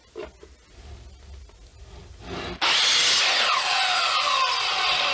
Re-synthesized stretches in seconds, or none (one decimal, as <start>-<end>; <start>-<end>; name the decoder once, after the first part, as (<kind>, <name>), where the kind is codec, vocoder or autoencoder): none